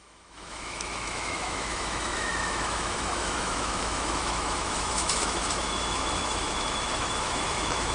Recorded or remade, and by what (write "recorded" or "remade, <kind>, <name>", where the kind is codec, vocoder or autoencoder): remade, autoencoder, DAC-VAE